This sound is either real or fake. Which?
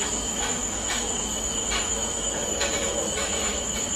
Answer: fake